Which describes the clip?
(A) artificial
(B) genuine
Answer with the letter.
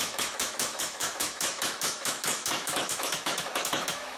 A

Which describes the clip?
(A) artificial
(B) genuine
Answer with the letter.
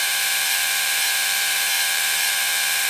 A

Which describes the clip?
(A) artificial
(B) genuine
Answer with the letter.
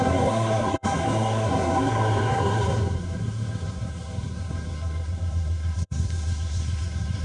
A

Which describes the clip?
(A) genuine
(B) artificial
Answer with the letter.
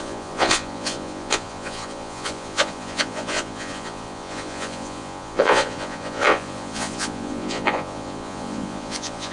B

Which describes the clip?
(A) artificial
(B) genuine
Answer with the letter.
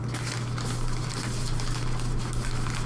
B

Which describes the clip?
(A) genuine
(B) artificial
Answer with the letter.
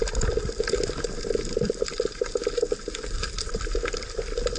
A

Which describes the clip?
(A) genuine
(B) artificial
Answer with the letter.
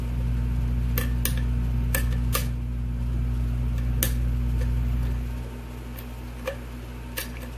A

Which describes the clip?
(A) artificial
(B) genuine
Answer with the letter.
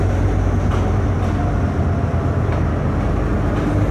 B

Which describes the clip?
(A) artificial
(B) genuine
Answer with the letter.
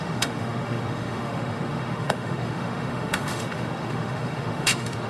A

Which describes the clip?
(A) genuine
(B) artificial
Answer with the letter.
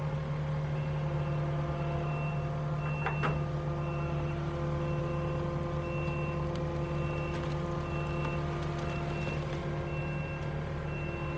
A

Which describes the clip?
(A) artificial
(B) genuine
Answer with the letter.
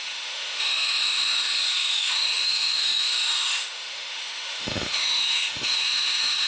A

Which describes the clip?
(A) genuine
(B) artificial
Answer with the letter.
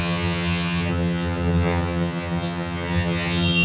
B